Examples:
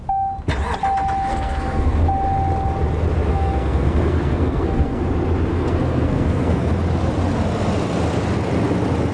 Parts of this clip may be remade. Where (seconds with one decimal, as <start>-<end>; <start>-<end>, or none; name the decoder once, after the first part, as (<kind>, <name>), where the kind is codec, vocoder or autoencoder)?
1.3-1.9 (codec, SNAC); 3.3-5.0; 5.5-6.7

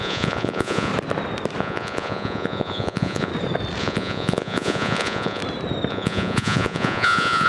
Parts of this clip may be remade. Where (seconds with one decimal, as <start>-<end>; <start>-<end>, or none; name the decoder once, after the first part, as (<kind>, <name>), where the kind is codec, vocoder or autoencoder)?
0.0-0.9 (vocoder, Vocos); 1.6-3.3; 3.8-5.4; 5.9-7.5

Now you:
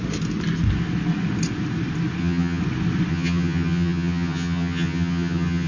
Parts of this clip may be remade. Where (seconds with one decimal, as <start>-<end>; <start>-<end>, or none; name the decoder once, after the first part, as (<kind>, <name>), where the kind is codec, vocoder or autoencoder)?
2.2-2.6 (vocoder, HiFi-GAN); 3.1-5.7

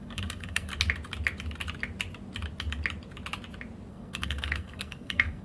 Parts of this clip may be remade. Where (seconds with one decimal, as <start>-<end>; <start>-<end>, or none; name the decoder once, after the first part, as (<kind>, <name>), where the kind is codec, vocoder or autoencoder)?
0.0-0.7 (codec, SNAC); 3.9-5.4